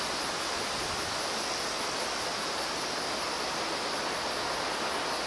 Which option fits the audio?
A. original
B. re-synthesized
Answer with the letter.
A